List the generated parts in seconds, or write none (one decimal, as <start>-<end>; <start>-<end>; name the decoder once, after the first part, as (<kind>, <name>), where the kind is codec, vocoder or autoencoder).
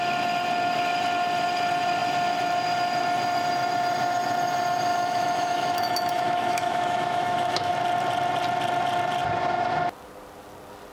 4.9-7.7 (autoencoder, DAC-VAE)